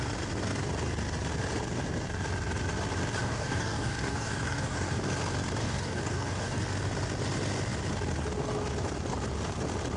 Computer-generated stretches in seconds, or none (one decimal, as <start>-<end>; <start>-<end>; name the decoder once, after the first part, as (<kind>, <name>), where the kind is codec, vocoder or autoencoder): 3.2-5.0 (codec, DAC); 5.6-6.6